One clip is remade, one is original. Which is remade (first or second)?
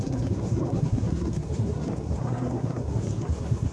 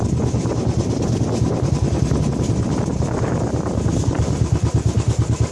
first